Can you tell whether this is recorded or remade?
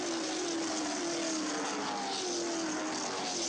recorded